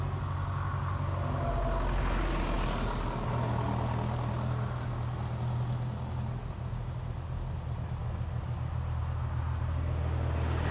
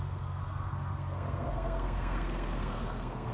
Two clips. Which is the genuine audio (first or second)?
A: first